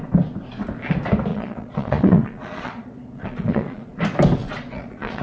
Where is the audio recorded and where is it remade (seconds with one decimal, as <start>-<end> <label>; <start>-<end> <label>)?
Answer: 0.0-1.3 recorded; 1.3-4.0 remade; 4.0-4.4 recorded; 4.4-5.2 remade